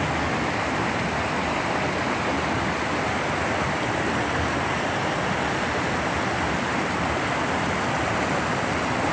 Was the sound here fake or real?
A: real